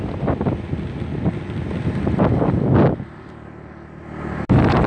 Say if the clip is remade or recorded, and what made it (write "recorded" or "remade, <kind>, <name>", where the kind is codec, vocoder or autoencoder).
recorded